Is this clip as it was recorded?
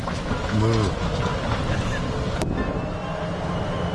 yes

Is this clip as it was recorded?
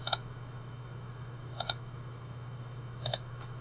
no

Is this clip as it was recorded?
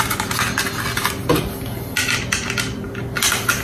yes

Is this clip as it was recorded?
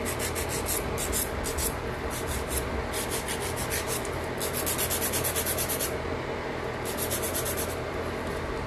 yes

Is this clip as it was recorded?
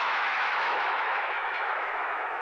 no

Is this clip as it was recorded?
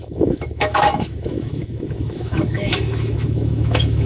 no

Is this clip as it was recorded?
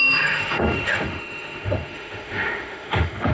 no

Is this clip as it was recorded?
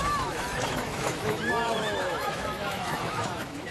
no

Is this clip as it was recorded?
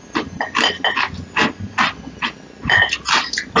yes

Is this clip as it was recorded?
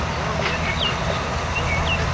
yes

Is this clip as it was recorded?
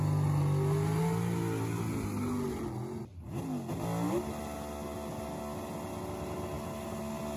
yes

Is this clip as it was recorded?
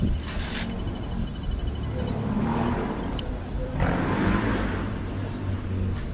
yes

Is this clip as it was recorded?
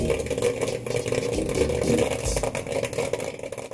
yes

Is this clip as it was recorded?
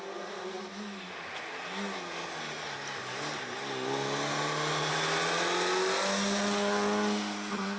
yes